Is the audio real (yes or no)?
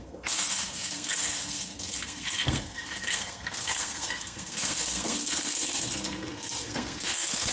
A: no